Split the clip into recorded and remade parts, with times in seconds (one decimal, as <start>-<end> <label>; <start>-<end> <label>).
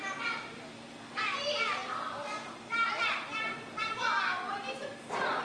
0.0-5.4 recorded